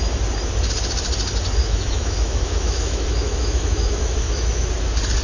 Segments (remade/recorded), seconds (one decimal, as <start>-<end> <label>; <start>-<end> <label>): 0.0-1.6 recorded; 1.6-4.7 remade; 4.7-5.2 recorded